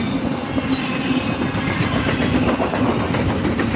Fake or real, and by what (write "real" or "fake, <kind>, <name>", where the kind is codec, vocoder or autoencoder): real